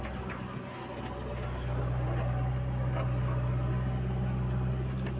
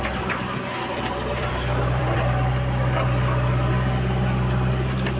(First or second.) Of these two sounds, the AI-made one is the second